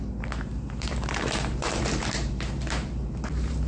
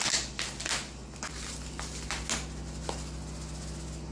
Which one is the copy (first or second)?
first